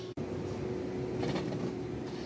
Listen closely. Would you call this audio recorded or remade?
recorded